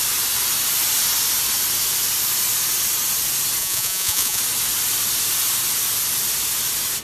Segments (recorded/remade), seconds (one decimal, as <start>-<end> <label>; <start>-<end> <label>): 0.0-3.6 recorded; 3.6-4.4 remade; 4.4-7.0 recorded

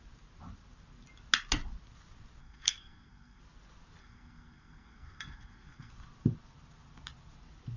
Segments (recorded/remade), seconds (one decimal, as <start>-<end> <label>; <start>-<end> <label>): 0.0-2.4 recorded; 2.4-3.4 remade; 3.4-4.0 recorded; 4.0-5.9 remade; 5.9-7.8 recorded